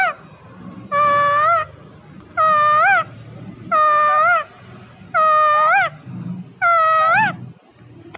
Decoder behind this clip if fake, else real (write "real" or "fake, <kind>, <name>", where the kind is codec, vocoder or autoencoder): real